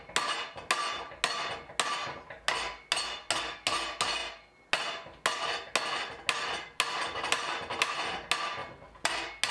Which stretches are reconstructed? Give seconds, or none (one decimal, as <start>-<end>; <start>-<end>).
none